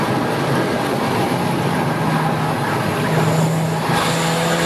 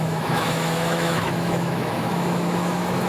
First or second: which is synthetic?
second